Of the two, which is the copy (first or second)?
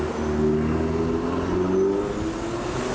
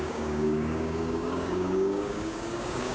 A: second